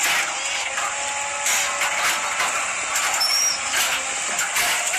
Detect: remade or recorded recorded